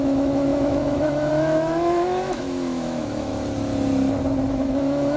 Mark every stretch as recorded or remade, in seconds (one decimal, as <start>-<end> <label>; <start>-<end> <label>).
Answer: 0.0-3.3 remade; 3.3-4.5 recorded; 4.5-5.2 remade